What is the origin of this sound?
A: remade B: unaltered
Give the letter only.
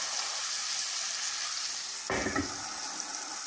B